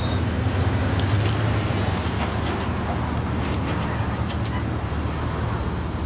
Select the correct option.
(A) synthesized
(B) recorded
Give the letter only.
B